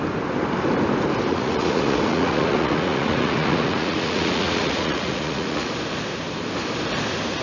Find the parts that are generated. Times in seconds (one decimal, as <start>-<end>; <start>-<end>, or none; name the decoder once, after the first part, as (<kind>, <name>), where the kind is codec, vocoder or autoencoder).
1.3-5.7 (vocoder, Vocos)